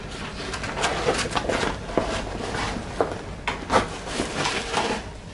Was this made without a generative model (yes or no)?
yes